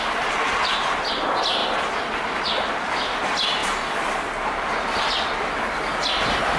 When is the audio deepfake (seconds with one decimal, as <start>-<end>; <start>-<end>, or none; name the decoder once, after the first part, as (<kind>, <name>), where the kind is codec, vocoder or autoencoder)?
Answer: none